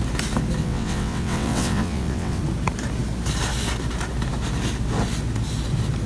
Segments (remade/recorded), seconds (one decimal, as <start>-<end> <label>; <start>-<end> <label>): 0.0-0.6 recorded; 0.6-2.4 remade; 2.4-6.1 recorded